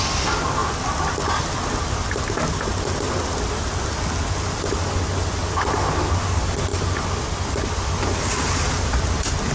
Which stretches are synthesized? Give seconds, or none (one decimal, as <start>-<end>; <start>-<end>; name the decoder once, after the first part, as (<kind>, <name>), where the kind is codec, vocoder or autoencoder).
none